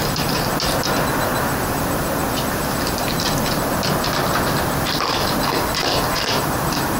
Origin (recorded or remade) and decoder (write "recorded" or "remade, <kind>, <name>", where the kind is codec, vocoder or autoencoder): recorded